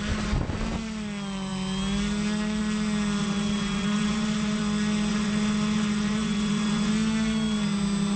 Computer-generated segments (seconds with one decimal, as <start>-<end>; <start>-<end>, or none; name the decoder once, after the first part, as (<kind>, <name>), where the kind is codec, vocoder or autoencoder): 3.2-4.6 (vocoder, Vocos); 5.1-6.9